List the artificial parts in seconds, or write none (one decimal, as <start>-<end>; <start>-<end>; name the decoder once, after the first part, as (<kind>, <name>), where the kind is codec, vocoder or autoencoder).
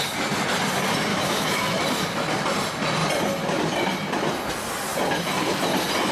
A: 1.1-1.8 (autoencoder, DAC-VAE)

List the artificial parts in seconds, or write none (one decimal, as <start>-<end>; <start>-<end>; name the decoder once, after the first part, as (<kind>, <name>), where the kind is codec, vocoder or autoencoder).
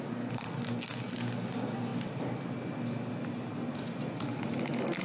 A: none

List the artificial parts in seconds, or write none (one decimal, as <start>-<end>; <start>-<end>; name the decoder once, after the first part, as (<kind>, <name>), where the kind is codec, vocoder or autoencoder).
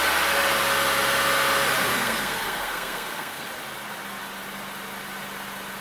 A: 1.9-3.5 (codec, SNAC)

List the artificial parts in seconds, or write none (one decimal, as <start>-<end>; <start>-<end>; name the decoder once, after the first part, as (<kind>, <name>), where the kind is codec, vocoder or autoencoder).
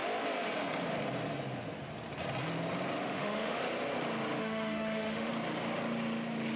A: 3.0-3.6 (autoencoder, DAC-VAE); 4.4-5.3